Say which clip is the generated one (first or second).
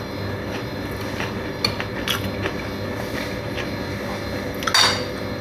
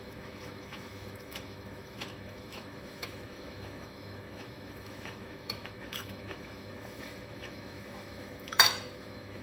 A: second